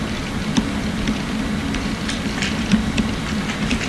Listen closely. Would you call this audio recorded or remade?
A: remade